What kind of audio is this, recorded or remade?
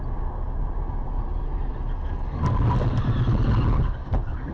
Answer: recorded